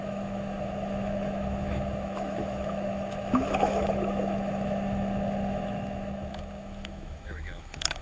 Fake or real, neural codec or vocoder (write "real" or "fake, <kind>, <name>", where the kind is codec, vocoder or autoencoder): fake, autoencoder, DAC-VAE